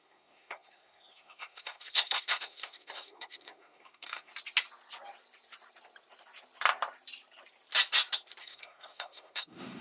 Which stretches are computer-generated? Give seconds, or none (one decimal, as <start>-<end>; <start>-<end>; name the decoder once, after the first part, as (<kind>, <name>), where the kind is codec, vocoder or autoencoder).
0.0-4.3 (codec, SNAC); 8.4-9.8